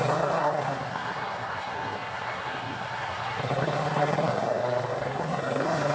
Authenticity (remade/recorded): remade